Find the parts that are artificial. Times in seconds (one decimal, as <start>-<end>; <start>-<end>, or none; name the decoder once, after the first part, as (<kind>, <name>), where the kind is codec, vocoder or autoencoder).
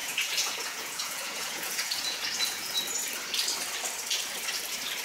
0.0-2.8 (vocoder, Vocos)